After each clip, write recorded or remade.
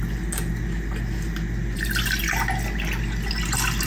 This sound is recorded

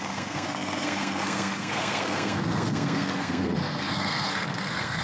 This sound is remade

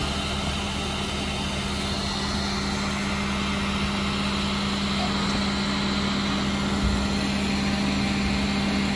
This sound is recorded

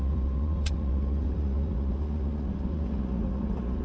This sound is remade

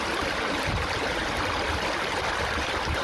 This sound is recorded